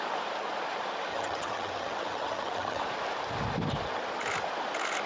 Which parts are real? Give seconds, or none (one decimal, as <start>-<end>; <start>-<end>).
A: 0.0-1.1; 2.8-5.1